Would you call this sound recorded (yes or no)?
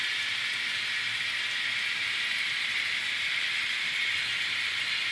no